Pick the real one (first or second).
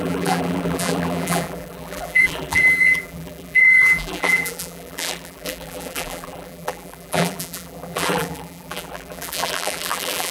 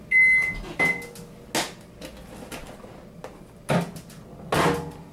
second